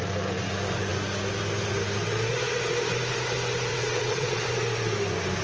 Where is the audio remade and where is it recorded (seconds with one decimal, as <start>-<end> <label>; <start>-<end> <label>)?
0.0-3.7 recorded; 3.7-4.5 remade; 4.5-5.4 recorded